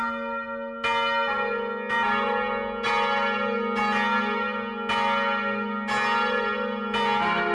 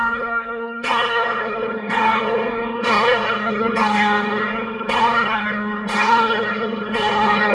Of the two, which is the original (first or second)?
first